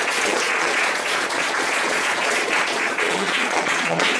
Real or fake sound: fake